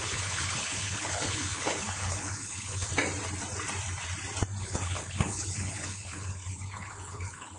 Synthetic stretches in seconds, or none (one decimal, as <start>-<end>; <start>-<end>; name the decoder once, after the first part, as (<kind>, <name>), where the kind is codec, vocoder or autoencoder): 0.0-2.9 (codec, HILCodec); 4.6-7.6